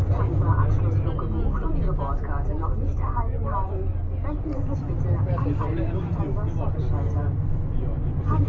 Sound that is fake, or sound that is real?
real